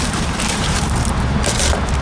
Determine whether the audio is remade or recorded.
remade